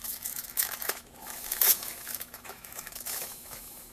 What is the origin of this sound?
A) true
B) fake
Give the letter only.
B